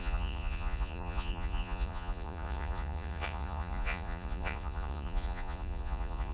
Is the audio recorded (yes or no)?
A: no